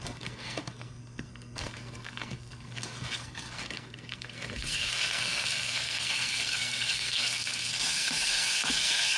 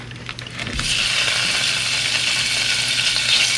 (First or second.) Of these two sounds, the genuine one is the second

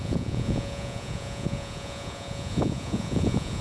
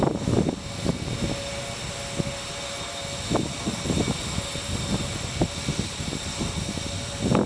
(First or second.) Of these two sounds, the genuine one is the second